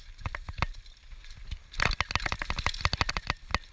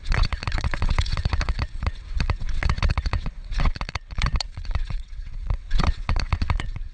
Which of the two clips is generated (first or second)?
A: second